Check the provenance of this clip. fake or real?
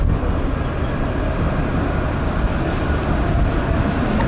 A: real